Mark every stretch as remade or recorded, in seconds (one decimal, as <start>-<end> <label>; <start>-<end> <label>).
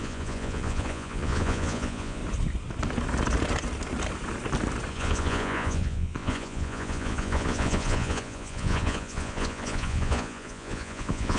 0.0-2.2 remade; 2.2-4.9 recorded; 4.9-11.4 remade